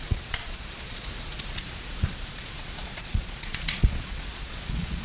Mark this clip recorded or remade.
remade